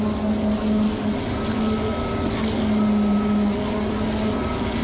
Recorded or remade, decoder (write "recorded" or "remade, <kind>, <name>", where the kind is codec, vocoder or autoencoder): recorded